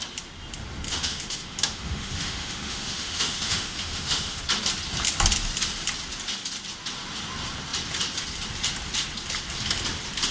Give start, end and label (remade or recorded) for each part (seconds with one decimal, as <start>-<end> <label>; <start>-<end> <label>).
0.0-0.9 recorded; 0.9-4.4 remade; 4.4-10.3 recorded

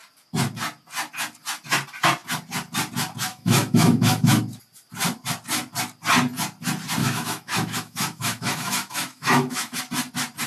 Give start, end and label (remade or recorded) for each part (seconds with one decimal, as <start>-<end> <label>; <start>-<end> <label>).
0.0-3.3 recorded; 3.3-4.4 remade; 4.4-7.0 recorded; 7.0-9.8 remade; 9.8-10.5 recorded

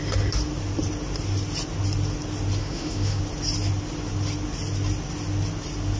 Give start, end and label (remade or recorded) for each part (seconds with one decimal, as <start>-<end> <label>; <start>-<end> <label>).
0.0-2.6 recorded; 2.6-3.2 remade; 3.2-6.0 recorded